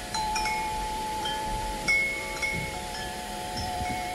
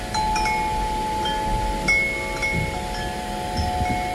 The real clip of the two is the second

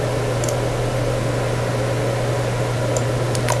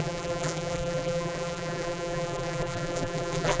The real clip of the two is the first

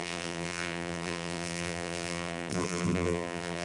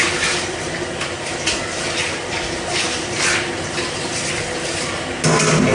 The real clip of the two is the second